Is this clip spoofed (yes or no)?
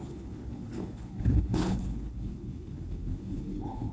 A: yes